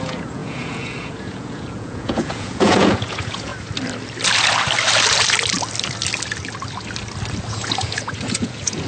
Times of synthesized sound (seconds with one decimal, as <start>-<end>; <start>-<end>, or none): 0.0-3.5; 7.5-8.9